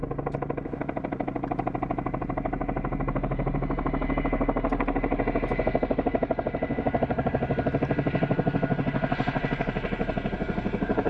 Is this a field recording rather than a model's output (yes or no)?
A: yes